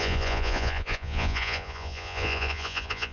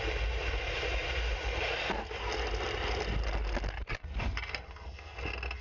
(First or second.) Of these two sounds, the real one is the second